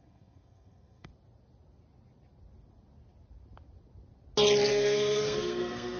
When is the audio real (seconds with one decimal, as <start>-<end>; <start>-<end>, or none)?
1.1-4.7